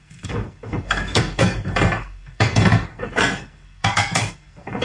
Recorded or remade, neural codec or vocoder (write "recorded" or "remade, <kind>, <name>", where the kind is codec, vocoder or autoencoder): remade, codec, SNAC